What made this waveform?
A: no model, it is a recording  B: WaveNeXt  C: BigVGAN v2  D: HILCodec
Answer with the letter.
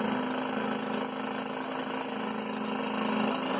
A